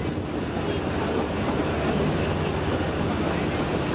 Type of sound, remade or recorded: recorded